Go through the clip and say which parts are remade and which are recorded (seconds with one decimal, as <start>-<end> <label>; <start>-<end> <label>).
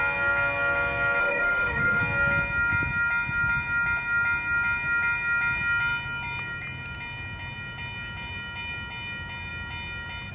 0.0-1.2 recorded; 1.2-2.0 remade; 2.0-10.3 recorded